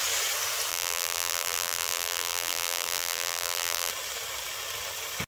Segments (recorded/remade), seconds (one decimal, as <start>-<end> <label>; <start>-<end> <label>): 0.0-0.7 recorded; 0.7-3.9 remade; 3.9-5.3 recorded